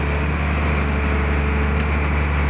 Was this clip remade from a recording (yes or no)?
no